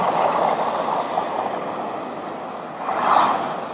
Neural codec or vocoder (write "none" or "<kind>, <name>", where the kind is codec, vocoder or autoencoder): none